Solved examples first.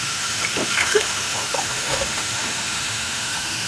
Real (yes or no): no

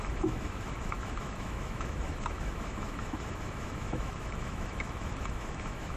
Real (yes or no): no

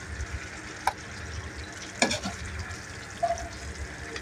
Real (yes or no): yes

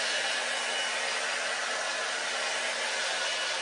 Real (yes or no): yes